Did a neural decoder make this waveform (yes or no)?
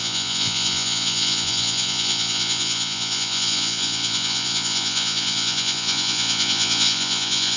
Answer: yes